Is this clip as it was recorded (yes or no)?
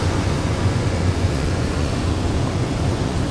no